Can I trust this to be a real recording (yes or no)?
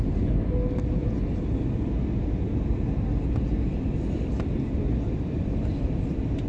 yes